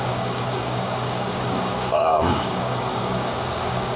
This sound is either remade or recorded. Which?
remade